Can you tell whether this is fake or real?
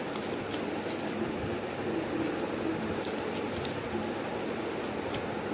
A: real